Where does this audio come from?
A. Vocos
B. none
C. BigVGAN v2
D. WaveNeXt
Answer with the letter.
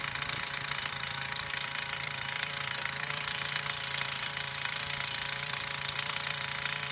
C